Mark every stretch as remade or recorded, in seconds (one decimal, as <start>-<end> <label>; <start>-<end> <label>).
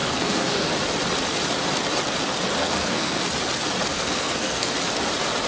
0.0-0.7 remade; 0.7-2.6 recorded; 2.6-3.2 remade; 3.2-3.9 recorded; 3.9-4.7 remade; 4.7-5.5 recorded